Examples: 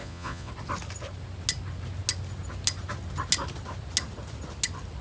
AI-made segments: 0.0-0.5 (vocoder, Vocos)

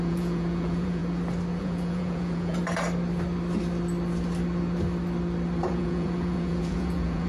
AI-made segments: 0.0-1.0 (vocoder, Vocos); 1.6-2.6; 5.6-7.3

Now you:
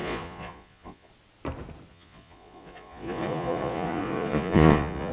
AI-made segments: 0.0-1.1 (vocoder, Vocos); 1.9-5.1